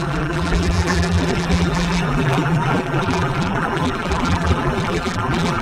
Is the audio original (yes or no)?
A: no